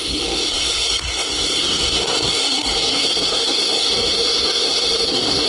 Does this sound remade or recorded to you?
remade